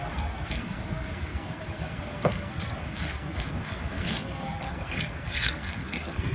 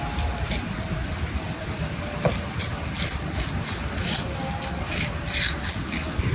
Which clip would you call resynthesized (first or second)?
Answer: first